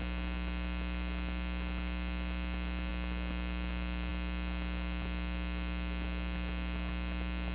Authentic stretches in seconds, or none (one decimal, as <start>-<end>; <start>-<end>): 0.0-7.5